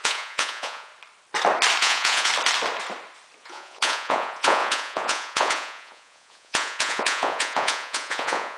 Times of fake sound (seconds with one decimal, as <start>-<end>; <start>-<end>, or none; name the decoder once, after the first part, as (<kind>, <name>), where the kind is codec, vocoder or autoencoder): 0.0-0.9 (vocoder, Vocos); 1.8-2.3; 3.4-8.6